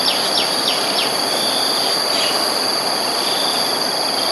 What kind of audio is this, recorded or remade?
recorded